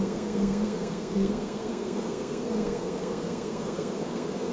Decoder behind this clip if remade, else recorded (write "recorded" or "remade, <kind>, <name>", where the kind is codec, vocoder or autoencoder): remade, codec, SNAC